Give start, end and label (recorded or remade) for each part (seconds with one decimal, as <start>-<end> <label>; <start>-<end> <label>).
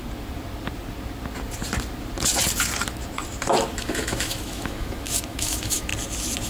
0.0-3.7 recorded; 3.7-5.9 remade; 5.9-6.5 recorded